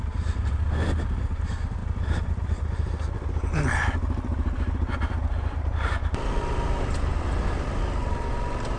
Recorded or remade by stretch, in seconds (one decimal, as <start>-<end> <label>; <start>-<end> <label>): 0.0-8.8 recorded